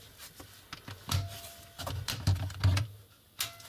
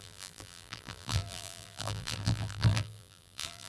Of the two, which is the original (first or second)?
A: first